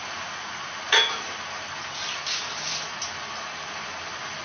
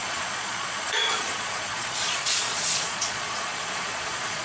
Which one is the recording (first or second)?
first